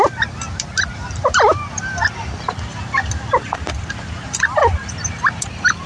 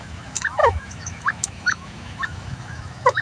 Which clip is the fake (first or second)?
second